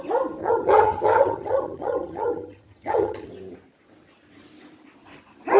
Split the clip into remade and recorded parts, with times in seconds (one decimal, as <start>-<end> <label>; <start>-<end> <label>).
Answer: 0.0-0.4 recorded; 0.4-3.3 remade; 3.3-5.6 recorded